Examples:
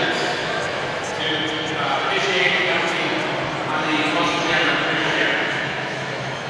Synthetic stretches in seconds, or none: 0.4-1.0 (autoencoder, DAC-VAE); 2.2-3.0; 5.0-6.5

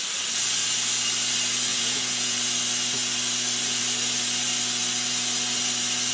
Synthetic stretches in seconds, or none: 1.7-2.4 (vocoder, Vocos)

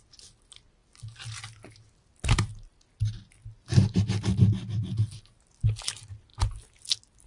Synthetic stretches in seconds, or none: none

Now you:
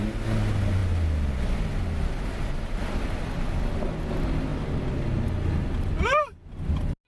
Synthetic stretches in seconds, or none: none

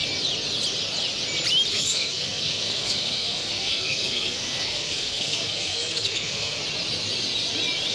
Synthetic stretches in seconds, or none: 1.7-6.6 (codec, SNAC)

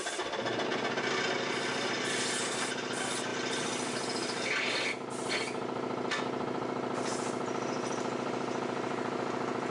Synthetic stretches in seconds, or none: none

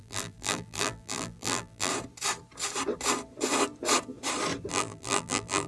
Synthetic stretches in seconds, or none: 0.0-1.9 (vocoder, BigVGAN v2); 4.7-5.7